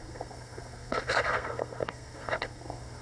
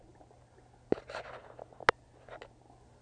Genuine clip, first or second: second